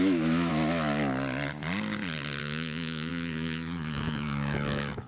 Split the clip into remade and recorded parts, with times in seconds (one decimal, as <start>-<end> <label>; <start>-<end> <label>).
0.0-0.5 remade; 0.5-2.4 recorded; 2.4-5.1 remade